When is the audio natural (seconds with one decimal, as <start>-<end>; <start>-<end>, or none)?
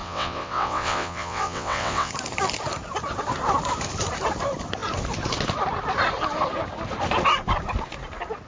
2.1-8.5